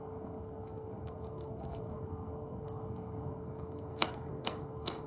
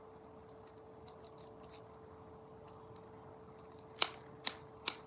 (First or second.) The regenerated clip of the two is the first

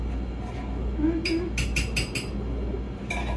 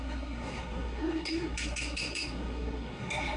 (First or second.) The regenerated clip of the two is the second